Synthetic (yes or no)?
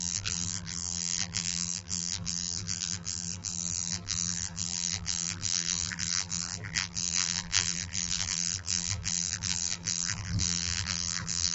yes